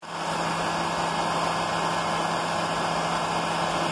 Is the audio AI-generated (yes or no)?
no